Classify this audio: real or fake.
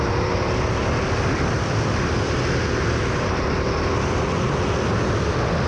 real